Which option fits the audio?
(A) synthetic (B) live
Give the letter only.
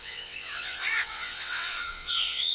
A